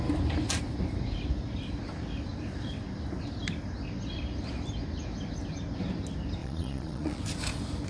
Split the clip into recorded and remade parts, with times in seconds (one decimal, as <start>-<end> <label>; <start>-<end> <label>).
0.0-6.4 recorded; 6.4-7.2 remade; 7.2-7.9 recorded